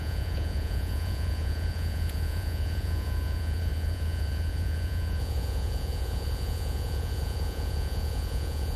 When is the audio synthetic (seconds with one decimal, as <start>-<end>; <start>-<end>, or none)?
0.0-8.8